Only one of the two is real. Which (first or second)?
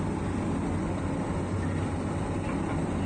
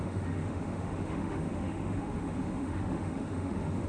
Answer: first